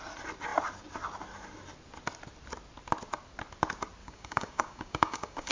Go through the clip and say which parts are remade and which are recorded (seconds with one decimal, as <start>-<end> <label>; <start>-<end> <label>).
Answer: 0.0-4.0 recorded; 4.0-5.5 remade